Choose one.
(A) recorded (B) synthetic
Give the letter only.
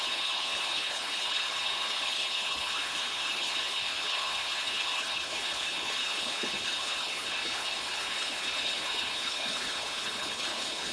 B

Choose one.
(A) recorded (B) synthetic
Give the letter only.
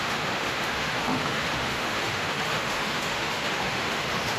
B